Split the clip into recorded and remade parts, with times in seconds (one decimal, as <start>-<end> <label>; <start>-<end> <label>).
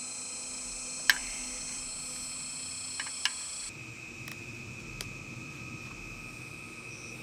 0.0-7.2 recorded